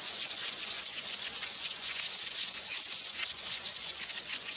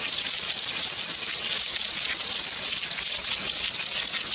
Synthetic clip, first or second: first